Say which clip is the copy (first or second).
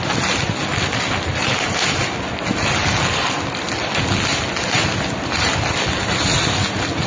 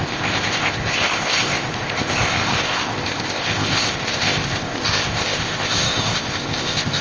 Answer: second